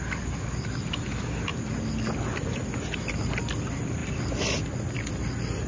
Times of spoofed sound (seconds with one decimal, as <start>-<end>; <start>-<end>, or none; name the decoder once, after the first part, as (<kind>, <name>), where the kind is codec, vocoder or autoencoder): none